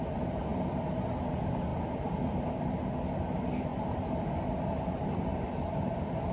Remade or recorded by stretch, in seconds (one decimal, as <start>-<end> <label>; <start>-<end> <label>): 0.0-0.5 recorded; 0.5-1.2 remade; 1.2-6.3 recorded

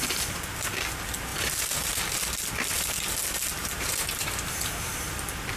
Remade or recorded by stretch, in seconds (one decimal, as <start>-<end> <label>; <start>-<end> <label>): 0.0-1.3 recorded; 1.3-1.9 remade; 1.9-3.6 recorded; 3.6-4.9 remade; 4.9-5.6 recorded

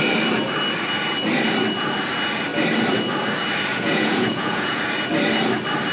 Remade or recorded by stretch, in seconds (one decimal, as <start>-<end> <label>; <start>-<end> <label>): 0.0-3.7 recorded; 3.7-4.8 remade; 4.8-5.9 recorded

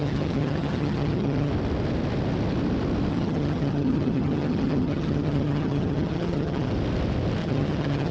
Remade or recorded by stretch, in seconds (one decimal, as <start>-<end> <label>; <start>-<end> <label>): 0.0-1.5 remade; 1.5-3.1 recorded; 3.1-6.7 remade; 6.7-7.4 recorded; 7.4-8.1 remade